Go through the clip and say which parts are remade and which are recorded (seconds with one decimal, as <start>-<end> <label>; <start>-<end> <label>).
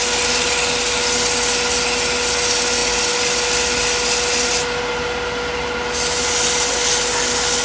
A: 0.0-7.6 recorded